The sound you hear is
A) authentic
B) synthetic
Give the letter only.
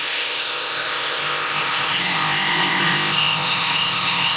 B